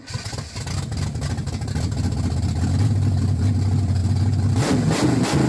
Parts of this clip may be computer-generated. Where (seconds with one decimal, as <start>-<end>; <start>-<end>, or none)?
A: none